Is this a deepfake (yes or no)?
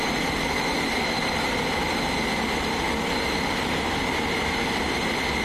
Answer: no